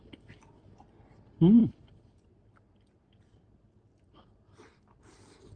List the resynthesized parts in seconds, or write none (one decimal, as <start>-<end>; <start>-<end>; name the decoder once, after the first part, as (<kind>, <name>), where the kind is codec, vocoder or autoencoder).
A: 1.6-5.0 (vocoder, BigVGAN v2)